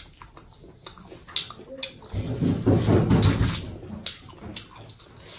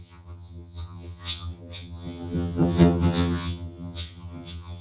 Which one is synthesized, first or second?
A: second